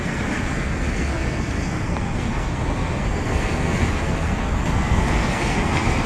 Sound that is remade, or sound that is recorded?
remade